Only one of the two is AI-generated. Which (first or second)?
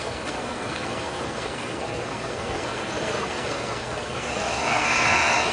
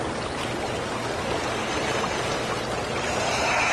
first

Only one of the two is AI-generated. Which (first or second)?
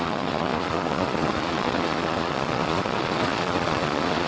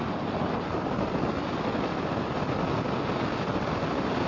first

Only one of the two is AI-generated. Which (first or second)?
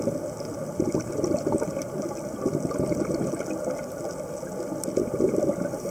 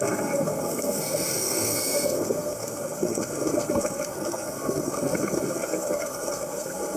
second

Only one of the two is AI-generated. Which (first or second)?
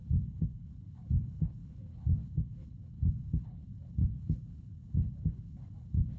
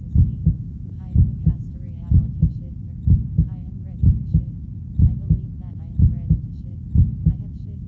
first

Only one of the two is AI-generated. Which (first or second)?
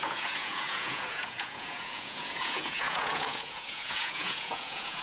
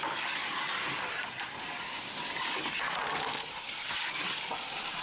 first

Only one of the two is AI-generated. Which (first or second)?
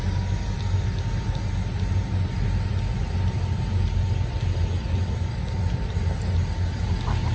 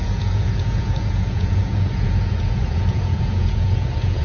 second